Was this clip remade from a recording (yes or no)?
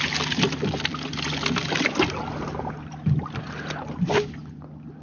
no